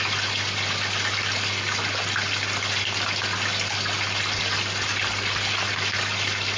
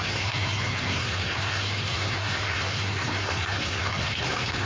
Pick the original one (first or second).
first